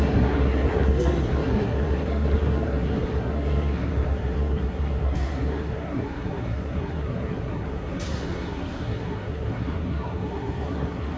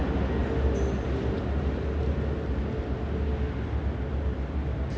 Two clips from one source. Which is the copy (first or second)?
first